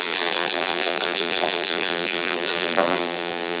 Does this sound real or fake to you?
fake